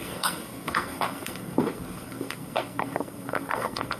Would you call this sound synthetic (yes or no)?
yes